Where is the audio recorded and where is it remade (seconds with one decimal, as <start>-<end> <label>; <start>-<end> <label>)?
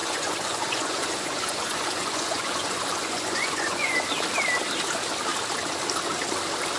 0.0-4.1 remade; 4.1-6.8 recorded